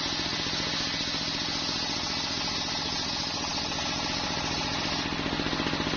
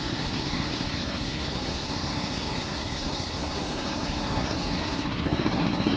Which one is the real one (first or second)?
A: first